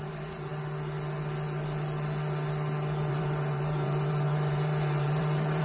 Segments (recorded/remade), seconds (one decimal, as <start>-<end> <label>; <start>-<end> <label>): 0.0-0.5 remade; 0.5-3.1 recorded; 3.1-5.6 remade